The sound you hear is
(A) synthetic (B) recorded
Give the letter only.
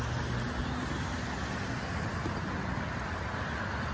B